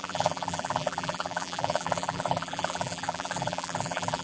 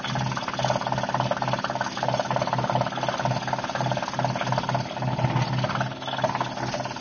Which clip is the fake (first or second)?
first